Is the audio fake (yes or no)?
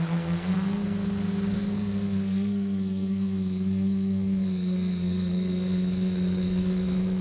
yes